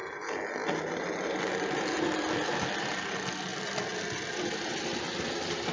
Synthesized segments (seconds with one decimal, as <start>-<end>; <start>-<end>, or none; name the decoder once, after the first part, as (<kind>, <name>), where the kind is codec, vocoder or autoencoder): 0.0-2.5 (vocoder, BigVGAN v2); 3.5-5.7

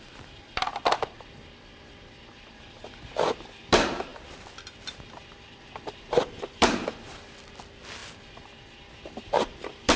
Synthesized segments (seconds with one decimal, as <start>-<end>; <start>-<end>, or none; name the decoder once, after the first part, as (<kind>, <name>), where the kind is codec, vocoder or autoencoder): 0.0-8.0 (vocoder, BigVGAN v2); 9.2-10.0

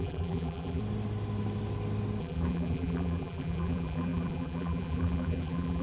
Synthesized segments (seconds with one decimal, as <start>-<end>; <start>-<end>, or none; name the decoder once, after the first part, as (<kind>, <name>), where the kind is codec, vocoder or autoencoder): 0.0-0.8 (vocoder, BigVGAN v2); 2.2-5.8

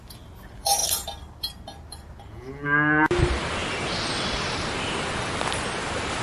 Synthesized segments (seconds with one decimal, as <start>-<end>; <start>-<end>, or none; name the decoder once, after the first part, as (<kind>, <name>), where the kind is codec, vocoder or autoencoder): 0.0-0.8 (vocoder, BigVGAN v2); 3.2-3.6; 4.5-6.2

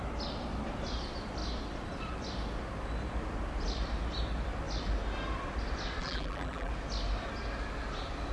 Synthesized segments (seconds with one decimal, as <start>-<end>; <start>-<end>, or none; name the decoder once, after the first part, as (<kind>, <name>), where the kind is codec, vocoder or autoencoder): 6.0-6.7 (vocoder, BigVGAN v2)

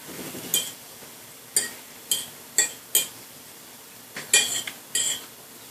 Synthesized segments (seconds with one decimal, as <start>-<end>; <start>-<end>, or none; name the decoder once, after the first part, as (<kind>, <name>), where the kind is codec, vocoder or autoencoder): none

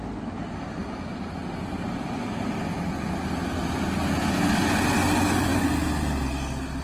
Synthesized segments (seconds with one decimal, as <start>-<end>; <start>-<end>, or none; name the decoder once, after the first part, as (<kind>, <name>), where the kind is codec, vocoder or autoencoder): 0.8-3.2 (vocoder, BigVGAN v2)